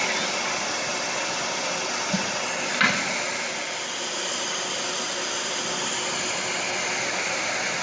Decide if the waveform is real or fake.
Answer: real